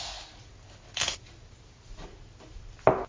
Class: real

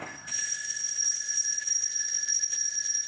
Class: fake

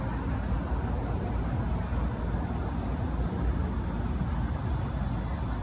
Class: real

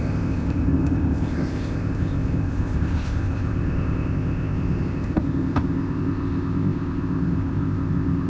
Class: fake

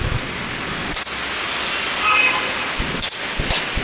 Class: real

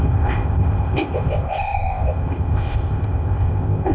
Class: fake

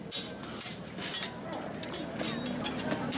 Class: real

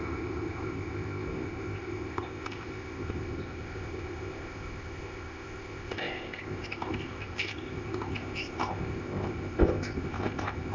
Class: fake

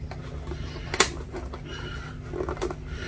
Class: real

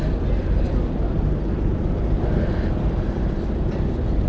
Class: real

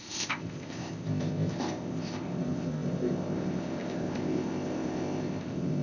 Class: fake